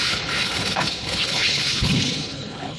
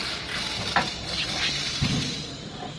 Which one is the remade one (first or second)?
first